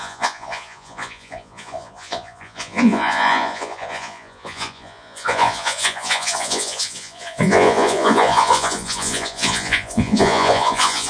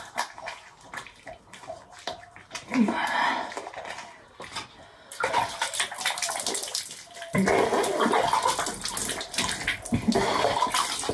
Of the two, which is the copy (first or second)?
first